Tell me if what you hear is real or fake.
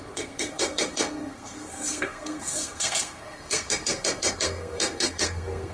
fake